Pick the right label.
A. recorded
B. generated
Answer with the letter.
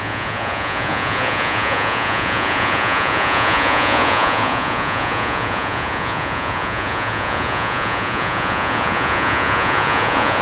B